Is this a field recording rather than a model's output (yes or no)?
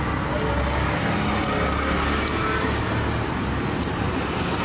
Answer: yes